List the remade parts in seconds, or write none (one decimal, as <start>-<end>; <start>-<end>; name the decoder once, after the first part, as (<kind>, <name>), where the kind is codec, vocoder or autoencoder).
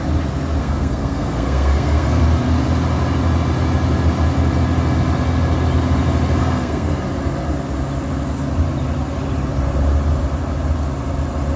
0.6-2.2 (codec, SNAC); 6.4-7.0